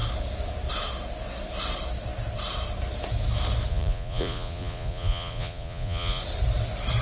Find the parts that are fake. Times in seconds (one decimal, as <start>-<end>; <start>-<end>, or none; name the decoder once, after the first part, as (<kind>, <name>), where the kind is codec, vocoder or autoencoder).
3.7-6.2 (vocoder, Vocos)